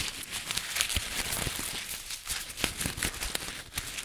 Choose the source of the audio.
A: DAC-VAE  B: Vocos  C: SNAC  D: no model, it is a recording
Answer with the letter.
D